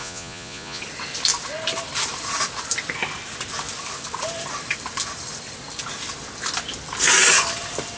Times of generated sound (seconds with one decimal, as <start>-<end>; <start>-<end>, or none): 0.0-0.8